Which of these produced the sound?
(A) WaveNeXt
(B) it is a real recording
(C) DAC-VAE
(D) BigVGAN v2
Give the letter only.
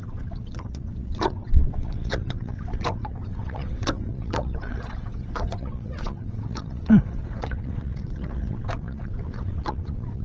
A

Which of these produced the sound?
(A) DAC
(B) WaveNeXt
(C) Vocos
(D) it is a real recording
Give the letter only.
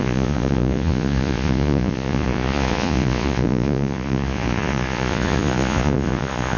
C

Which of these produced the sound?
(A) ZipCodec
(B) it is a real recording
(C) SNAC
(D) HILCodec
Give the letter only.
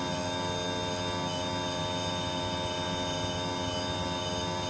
B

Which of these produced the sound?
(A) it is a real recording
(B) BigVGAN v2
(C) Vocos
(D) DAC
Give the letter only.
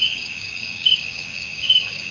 D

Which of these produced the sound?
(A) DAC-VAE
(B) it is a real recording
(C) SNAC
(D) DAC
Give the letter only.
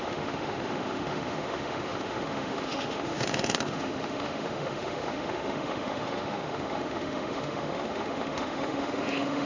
A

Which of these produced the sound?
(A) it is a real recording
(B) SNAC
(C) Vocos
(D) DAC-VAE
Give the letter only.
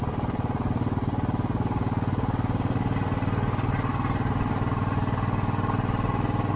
A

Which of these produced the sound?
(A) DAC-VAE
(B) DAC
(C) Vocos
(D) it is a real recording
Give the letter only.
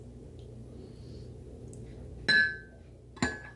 D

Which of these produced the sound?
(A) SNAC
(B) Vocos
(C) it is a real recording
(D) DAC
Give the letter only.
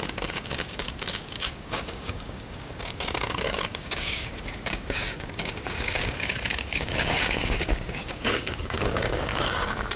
D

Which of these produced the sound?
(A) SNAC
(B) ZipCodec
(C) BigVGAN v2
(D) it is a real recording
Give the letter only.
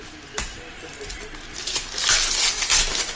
D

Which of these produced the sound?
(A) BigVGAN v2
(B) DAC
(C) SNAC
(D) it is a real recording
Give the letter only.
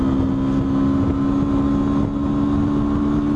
D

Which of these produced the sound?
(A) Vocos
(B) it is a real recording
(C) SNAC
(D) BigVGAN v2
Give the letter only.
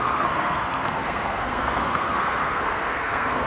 C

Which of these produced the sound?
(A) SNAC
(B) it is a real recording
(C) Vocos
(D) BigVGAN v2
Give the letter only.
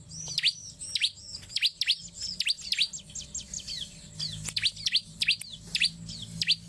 B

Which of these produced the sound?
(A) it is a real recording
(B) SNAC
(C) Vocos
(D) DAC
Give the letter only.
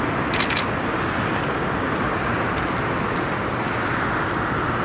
A